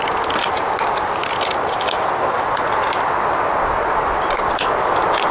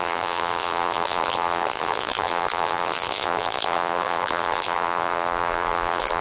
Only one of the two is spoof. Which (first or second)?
second